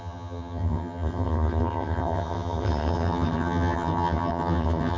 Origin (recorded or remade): remade